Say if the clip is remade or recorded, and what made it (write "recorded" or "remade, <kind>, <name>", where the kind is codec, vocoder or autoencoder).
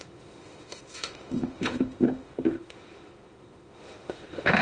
remade, autoencoder, DAC-VAE